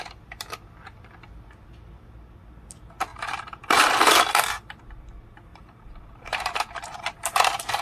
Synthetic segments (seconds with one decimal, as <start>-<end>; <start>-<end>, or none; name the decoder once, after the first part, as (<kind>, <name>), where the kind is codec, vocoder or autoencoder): 3.1-4.8 (vocoder, BigVGAN v2); 5.5-7.8